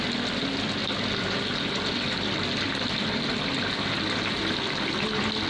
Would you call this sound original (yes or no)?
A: yes